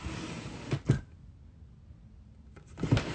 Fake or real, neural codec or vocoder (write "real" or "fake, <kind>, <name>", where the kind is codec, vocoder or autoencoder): real